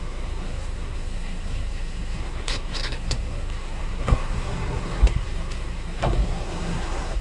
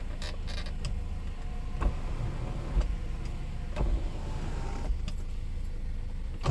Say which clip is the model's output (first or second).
first